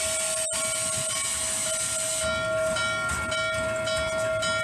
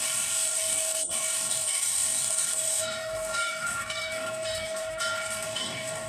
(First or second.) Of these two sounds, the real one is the first